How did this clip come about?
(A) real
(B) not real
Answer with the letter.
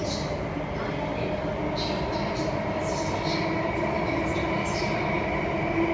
A